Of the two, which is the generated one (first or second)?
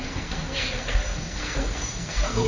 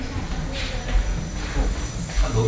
first